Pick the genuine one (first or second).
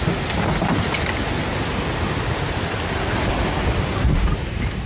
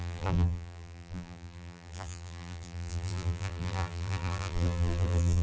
first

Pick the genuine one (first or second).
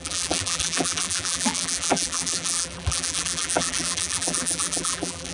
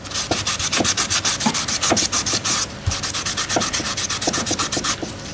second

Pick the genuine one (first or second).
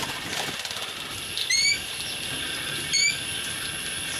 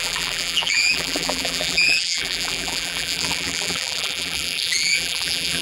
first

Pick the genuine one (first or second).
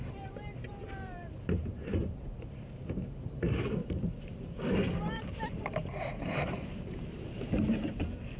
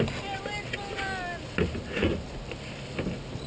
second